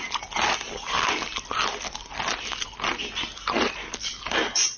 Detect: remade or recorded recorded